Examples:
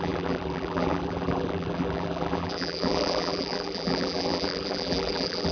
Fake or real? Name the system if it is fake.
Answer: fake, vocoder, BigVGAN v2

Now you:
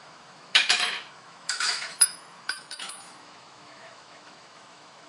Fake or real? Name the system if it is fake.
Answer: fake, autoencoder, DAC-VAE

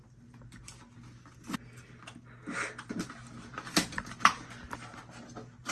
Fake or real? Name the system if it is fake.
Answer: real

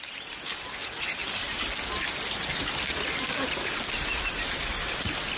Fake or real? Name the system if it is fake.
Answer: real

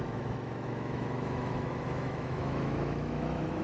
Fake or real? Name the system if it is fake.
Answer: fake, autoencoder, DAC-VAE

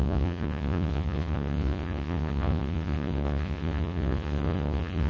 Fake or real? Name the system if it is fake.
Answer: fake, vocoder, Vocos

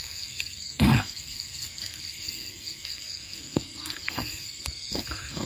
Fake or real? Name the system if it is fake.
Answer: fake, codec, SNAC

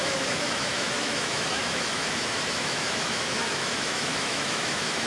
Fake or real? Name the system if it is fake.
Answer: fake, autoencoder, DAC-VAE